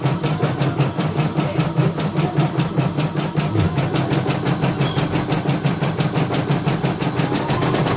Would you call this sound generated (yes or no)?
no